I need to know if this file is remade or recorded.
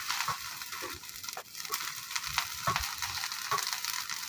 recorded